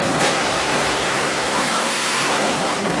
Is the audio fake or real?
fake